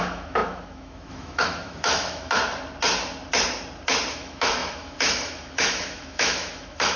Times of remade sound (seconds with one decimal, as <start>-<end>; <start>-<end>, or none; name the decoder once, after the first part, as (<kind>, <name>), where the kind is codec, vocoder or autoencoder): 0.0-2.4 (autoencoder, DAC-VAE); 4.1-7.0

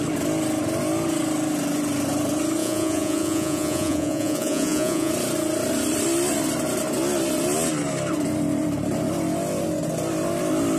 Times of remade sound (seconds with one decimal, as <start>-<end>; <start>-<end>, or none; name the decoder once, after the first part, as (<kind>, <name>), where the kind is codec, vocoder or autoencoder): 2.6-5.1 (vocoder, Vocos)